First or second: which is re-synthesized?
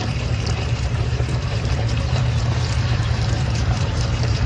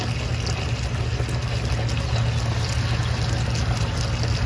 first